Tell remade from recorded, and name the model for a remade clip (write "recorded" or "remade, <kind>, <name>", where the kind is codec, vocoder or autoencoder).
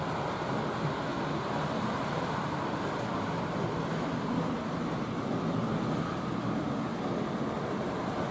recorded